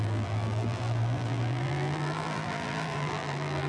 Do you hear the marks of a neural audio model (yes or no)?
yes